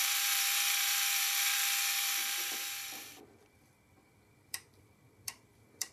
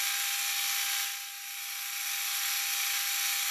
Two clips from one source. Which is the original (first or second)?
second